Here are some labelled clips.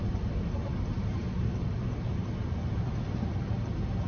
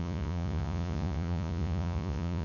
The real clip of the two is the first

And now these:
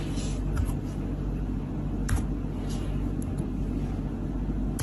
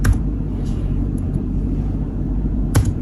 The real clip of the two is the first